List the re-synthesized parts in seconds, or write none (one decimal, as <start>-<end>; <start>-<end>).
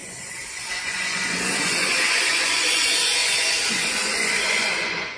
0.0-5.2